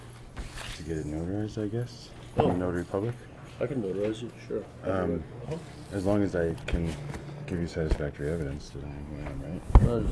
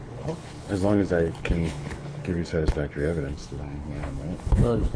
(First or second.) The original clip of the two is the first